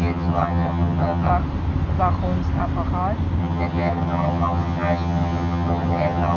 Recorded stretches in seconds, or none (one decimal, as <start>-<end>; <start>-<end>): 1.3-3.4